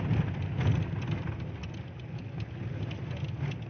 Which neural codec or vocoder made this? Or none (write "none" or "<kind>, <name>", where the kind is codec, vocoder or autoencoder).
none